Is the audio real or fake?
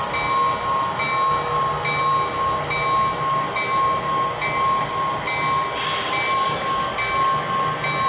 real